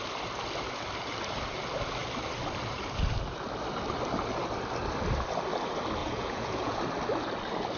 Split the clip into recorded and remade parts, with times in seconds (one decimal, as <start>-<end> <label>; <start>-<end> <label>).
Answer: 0.0-6.0 recorded; 6.0-6.8 remade; 6.8-7.8 recorded